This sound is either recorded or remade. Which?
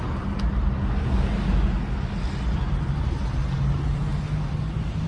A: recorded